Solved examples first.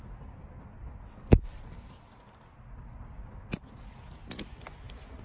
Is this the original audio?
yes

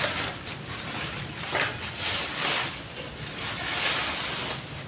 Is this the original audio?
yes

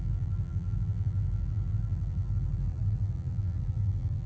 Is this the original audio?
no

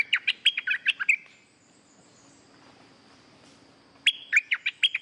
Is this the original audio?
yes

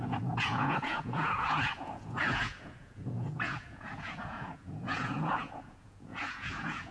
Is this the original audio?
no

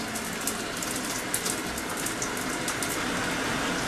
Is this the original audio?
yes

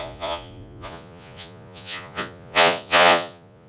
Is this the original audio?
no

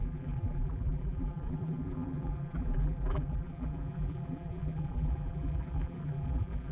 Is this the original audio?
no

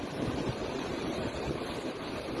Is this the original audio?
no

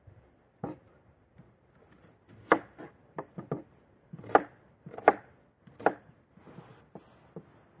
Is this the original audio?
yes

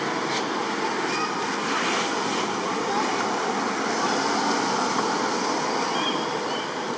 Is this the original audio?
yes